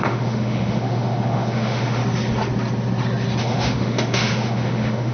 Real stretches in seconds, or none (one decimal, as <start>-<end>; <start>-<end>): 2.0-3.4